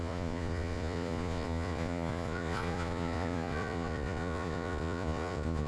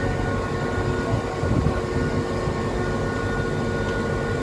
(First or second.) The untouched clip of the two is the second